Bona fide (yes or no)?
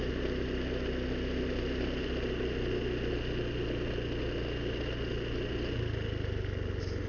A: yes